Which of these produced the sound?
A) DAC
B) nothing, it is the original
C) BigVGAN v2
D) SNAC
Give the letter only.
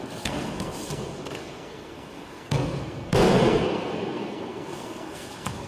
D